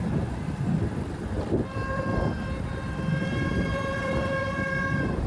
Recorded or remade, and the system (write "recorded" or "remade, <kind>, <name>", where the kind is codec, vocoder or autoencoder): remade, vocoder, BigVGAN v2